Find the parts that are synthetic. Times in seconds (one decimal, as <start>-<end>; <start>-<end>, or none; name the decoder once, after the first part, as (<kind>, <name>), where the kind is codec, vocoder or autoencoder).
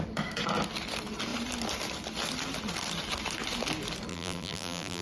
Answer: 4.1-5.0 (vocoder, BigVGAN v2)